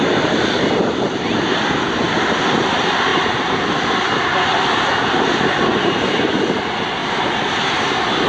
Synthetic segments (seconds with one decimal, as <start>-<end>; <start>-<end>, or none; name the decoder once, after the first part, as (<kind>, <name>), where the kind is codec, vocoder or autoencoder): 3.1-3.6 (vocoder, BigVGAN v2); 5.7-6.3; 7.0-7.9